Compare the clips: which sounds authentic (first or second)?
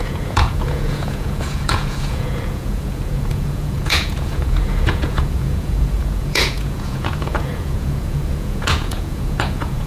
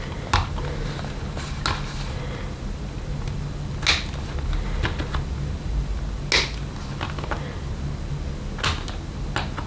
second